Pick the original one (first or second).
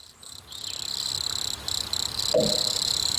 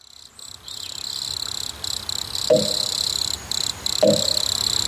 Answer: second